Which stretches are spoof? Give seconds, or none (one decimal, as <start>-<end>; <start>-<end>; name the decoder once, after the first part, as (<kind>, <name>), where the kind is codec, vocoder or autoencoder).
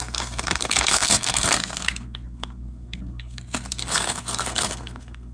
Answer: 0.0-5.3 (codec, SNAC)